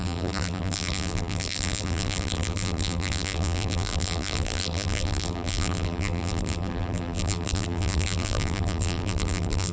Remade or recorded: remade